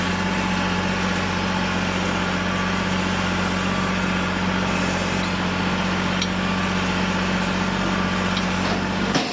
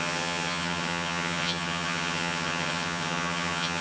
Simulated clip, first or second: second